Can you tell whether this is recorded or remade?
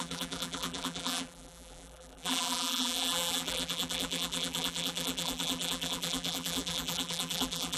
remade